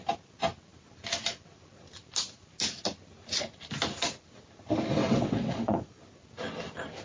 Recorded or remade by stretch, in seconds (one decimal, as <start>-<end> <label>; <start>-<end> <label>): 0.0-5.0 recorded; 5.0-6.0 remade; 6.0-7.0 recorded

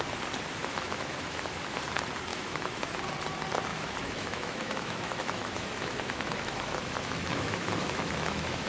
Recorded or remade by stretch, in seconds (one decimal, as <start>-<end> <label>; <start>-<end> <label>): 0.0-0.6 recorded; 0.6-1.8 remade; 1.8-2.3 recorded; 2.3-3.0 remade; 3.0-3.7 recorded; 3.7-8.7 remade

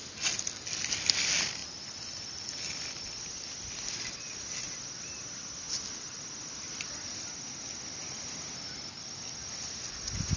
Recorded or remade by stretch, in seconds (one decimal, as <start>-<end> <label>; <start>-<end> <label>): 0.0-10.4 recorded